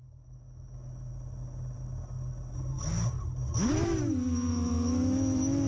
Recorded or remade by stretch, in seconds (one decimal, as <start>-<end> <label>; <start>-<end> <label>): 0.0-1.1 remade; 1.1-4.5 recorded; 4.5-5.7 remade